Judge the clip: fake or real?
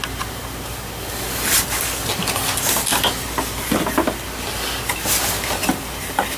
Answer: real